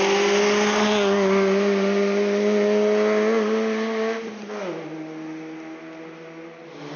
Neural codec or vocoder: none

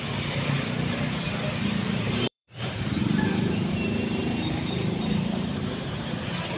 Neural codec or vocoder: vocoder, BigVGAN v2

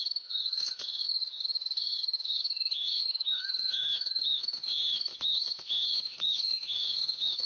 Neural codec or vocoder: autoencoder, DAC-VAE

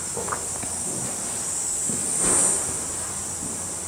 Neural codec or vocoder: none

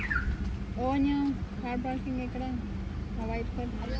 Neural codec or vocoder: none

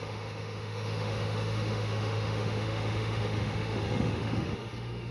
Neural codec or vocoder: autoencoder, DAC-VAE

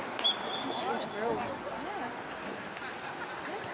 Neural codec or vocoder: none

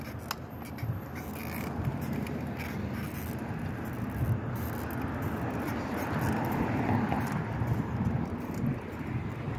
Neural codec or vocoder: none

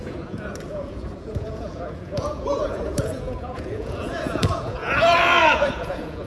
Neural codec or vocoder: vocoder, Vocos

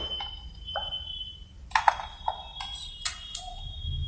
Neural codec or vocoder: none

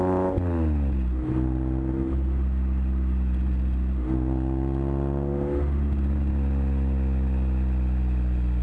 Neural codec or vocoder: none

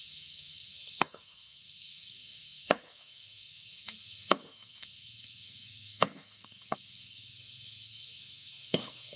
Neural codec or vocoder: codec, SNAC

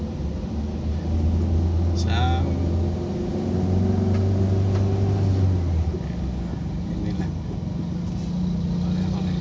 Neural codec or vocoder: none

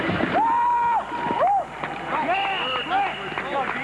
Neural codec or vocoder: none